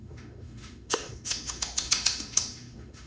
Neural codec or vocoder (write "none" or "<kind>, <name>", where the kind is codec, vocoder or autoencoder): autoencoder, DAC-VAE